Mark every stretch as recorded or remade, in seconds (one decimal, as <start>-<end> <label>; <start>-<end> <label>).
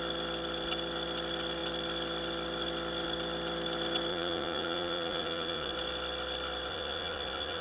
0.0-4.1 recorded; 4.1-5.7 remade; 5.7-6.7 recorded; 6.7-7.6 remade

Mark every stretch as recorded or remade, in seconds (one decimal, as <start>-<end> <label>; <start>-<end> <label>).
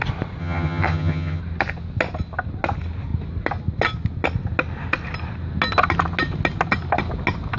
0.0-0.4 recorded; 0.4-1.4 remade; 1.4-7.6 recorded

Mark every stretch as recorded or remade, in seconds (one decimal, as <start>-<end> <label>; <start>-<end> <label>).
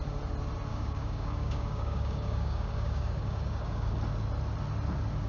0.0-0.7 recorded; 0.7-3.9 remade; 3.9-5.3 recorded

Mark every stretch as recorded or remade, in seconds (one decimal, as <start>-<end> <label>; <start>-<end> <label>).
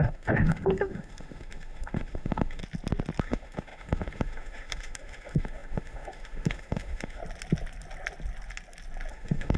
0.0-2.6 remade; 2.6-3.2 recorded; 3.2-7.2 remade; 7.2-9.1 recorded; 9.1-9.6 remade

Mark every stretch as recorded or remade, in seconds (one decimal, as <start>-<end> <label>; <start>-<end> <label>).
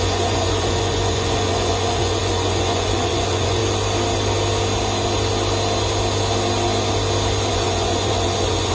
0.0-3.6 remade; 3.6-7.5 recorded; 7.5-8.7 remade